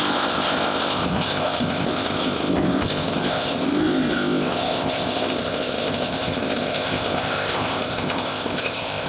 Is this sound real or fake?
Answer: fake